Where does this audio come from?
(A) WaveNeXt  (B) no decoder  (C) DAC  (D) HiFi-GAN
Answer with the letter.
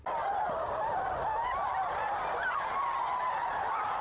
B